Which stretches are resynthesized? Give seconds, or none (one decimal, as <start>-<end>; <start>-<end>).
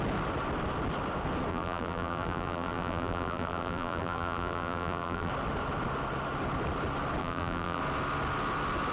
1.5-5.3; 7.2-7.8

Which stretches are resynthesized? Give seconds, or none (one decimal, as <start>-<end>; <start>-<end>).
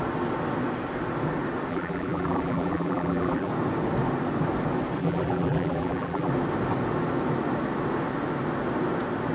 1.7-3.5; 5.0-6.3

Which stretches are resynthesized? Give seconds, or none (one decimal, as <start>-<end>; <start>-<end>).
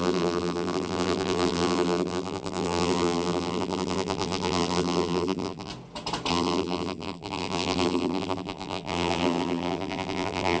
0.0-5.7; 6.3-10.6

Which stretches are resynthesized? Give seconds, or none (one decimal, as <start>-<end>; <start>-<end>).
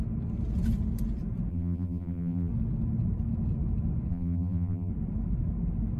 1.5-2.5; 4.1-4.9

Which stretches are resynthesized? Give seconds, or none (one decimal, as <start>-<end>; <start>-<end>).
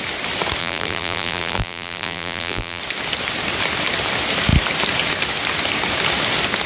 0.6-2.8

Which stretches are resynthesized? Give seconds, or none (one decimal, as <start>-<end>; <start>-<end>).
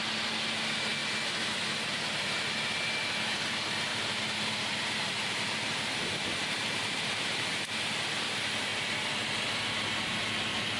3.9-7.8; 8.7-10.1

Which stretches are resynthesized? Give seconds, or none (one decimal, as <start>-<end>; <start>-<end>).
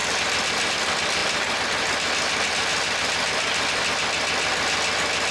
none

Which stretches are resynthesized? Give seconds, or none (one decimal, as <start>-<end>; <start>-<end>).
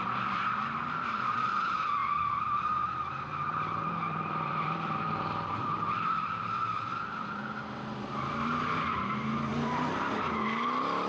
0.0-11.1